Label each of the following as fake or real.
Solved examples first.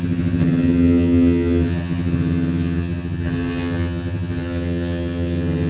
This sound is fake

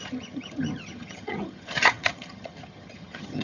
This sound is fake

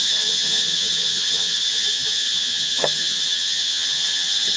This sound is fake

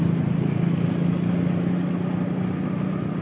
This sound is real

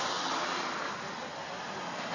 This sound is real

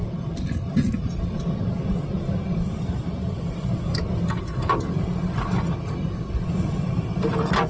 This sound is real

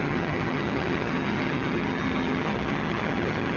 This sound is fake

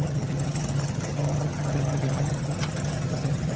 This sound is fake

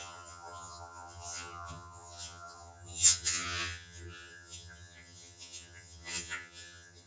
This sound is fake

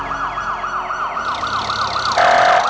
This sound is real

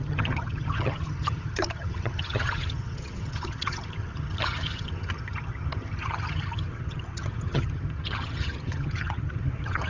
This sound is fake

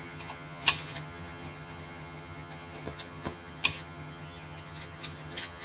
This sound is fake